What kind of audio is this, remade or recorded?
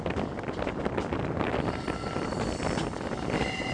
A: recorded